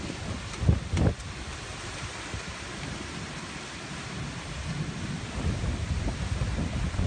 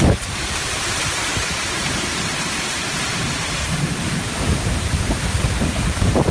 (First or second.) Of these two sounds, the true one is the first